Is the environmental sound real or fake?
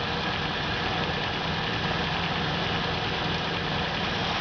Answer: real